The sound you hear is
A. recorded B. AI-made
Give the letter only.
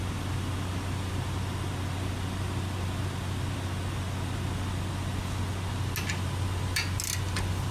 A